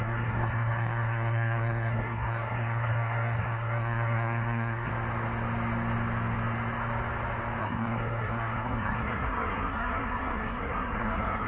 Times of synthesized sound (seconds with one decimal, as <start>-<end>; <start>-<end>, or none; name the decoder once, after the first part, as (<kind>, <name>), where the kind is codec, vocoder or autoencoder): 0.0-4.9 (codec, SNAC); 7.6-11.5